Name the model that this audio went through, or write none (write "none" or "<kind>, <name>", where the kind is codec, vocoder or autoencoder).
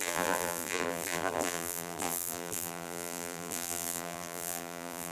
vocoder, BigVGAN v2